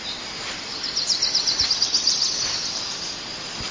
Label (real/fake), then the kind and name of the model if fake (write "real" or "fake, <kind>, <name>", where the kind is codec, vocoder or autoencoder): real